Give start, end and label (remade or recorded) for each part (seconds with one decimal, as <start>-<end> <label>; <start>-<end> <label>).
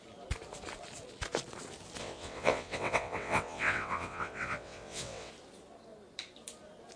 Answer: 0.0-2.0 recorded; 2.0-5.3 remade; 5.3-7.0 recorded